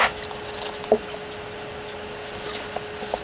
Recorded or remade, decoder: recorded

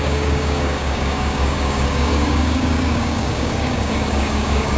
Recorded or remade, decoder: remade, codec, DAC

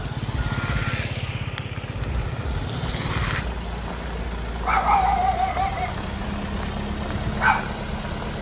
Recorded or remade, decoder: recorded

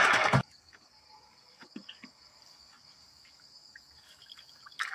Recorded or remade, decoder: remade, codec, DAC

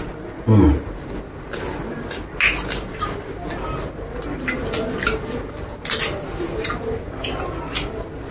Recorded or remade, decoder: recorded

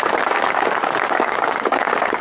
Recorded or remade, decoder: remade, codec, DAC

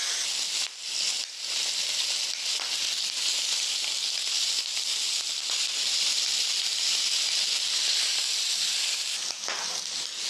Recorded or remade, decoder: recorded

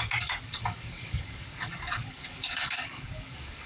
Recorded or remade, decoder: remade, codec, DAC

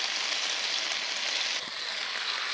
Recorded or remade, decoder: recorded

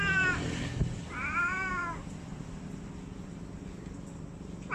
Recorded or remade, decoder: recorded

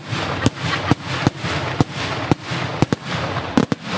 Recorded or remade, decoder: recorded